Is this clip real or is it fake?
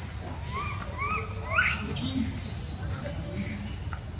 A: real